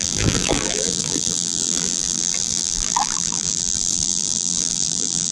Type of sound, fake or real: fake